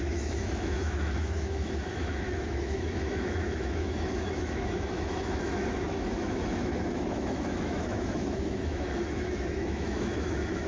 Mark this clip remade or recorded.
remade